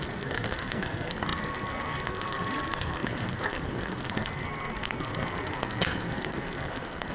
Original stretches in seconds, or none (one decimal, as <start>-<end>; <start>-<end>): none